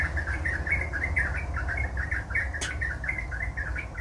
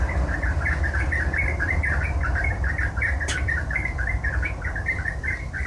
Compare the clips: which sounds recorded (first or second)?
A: first